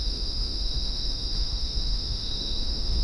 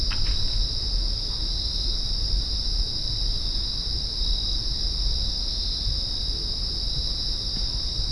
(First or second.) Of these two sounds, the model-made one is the first